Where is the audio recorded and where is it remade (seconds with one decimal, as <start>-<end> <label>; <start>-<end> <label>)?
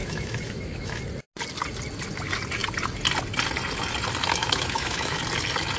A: 0.0-1.0 remade; 1.0-4.4 recorded; 4.4-5.2 remade; 5.2-5.8 recorded